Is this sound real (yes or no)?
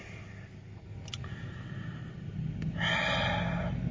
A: yes